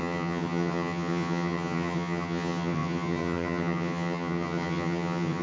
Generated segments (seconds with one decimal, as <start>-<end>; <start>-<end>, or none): 0.0-5.4